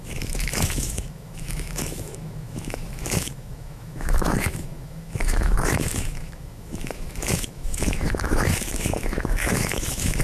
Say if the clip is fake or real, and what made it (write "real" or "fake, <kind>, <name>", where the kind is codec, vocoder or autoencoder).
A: fake, autoencoder, DAC-VAE